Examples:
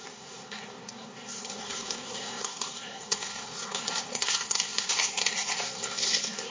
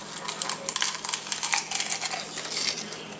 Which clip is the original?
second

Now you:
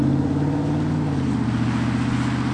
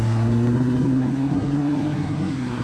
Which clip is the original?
first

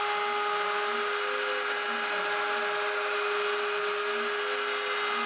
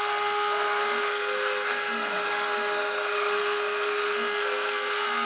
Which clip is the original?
first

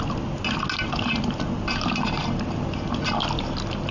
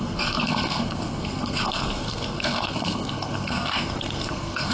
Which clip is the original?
first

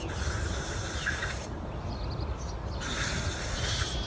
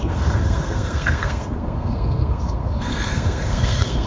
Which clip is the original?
first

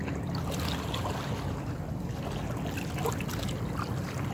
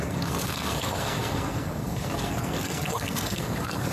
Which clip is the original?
first